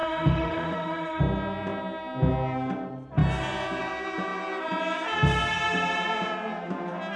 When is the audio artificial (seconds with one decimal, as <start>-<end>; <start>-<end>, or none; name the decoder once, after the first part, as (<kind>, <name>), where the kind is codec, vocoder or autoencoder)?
0.0-1.2 (autoencoder, DAC-VAE)